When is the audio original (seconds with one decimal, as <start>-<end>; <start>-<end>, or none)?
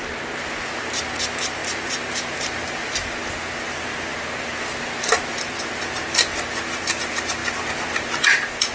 0.0-1.6; 3.1-8.7